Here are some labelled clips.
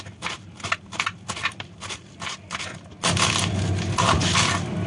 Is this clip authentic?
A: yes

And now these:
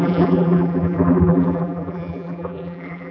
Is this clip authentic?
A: no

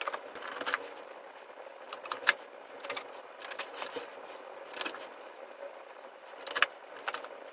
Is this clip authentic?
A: yes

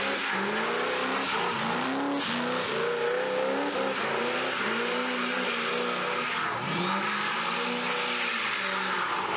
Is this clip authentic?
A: yes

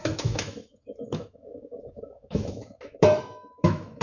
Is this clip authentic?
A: no